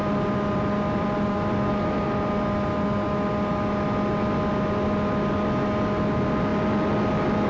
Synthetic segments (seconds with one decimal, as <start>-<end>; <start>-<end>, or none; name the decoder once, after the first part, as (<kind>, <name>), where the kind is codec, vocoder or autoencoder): 0.0-1.7 (vocoder, BigVGAN v2)